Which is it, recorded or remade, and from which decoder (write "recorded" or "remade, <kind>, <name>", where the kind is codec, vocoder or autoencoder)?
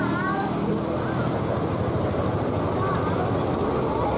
recorded